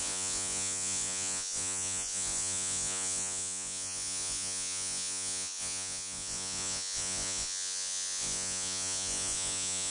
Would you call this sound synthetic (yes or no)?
yes